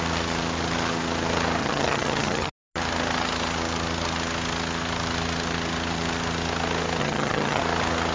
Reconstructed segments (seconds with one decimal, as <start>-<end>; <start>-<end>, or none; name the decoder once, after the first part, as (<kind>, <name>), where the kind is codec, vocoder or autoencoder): 1.6-2.5 (vocoder, HiFi-GAN); 7.0-7.6